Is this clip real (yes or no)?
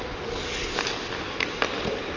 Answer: yes